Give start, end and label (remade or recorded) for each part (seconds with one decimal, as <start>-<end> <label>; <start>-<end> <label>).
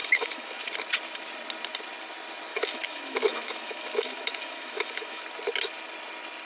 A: 0.0-0.6 remade; 0.6-2.5 recorded; 2.5-5.2 remade; 5.2-6.5 recorded